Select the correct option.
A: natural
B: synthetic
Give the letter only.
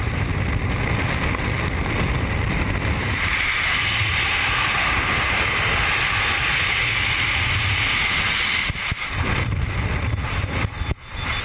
A